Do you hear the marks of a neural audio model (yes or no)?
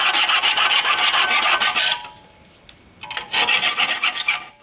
no